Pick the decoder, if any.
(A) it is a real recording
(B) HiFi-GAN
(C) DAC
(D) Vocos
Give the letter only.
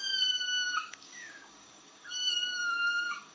C